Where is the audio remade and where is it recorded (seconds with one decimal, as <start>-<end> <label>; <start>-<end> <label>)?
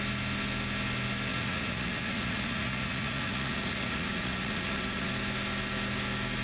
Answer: 0.0-1.3 recorded; 1.3-5.1 remade; 5.1-6.4 recorded